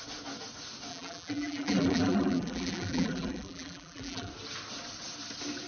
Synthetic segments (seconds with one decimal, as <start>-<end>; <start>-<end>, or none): 0.9-4.3